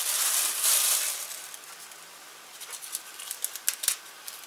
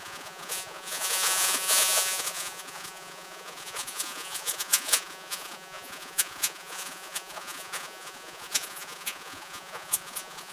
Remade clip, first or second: second